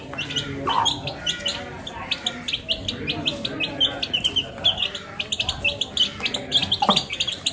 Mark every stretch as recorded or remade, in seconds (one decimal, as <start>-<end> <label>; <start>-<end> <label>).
0.0-7.5 recorded

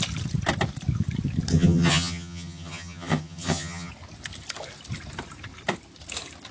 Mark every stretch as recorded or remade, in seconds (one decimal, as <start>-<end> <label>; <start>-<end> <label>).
0.0-1.5 recorded; 1.5-3.9 remade; 3.9-6.5 recorded